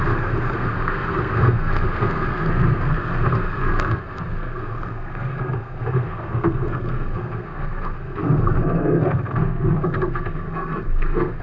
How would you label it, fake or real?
fake